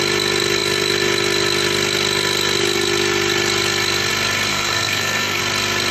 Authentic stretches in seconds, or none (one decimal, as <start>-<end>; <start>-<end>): 0.0-4.5; 5.4-5.9